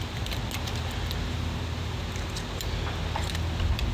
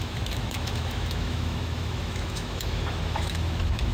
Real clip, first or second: first